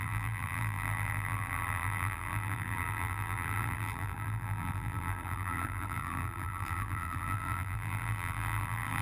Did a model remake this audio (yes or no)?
yes